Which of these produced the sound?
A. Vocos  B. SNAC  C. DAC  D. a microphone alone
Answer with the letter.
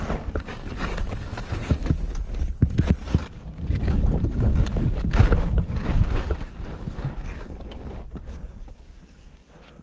C